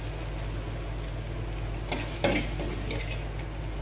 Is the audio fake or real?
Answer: real